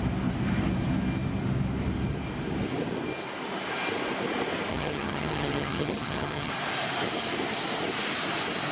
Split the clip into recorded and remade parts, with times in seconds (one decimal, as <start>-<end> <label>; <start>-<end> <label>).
0.0-4.7 recorded; 4.7-6.5 remade; 6.5-8.7 recorded